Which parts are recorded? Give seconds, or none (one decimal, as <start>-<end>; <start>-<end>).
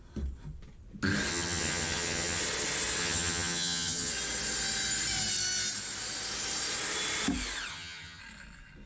0.0-1.3; 2.4-3.0; 4.1-7.7; 8.2-8.9